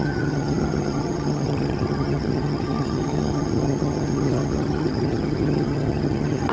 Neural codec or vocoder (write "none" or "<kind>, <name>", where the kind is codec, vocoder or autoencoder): vocoder, HiFi-GAN